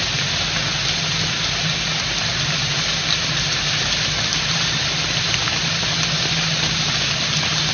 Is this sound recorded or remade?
recorded